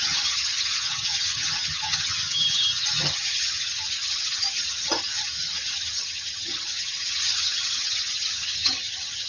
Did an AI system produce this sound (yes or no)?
yes